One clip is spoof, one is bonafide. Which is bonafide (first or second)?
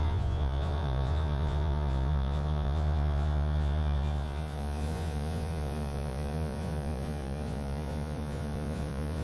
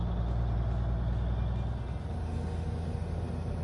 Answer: second